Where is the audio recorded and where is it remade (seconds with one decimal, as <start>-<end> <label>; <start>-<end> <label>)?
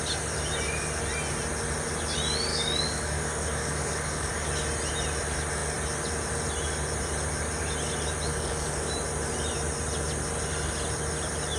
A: 0.0-2.5 recorded; 2.5-4.5 remade; 4.5-8.3 recorded; 8.3-8.9 remade; 8.9-11.6 recorded